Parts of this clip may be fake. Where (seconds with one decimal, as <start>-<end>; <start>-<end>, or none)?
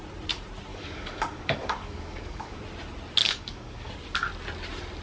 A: 0.7-2.6; 3.2-3.9